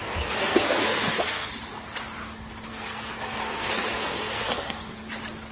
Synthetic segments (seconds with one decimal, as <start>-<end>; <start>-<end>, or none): 0.0-1.5; 2.7-5.0